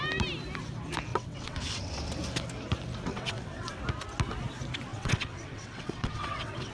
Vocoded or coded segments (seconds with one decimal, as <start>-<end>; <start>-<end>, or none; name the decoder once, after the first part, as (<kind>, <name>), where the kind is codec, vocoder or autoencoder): 1.1-2.0 (vocoder, WaveNeXt); 3.1-3.8; 4.9-6.7